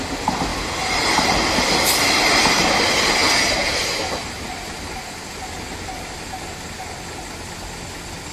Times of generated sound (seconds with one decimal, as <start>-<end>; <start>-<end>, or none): 0.5-1.5; 3.2-6.3